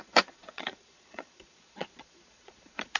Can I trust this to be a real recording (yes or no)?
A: no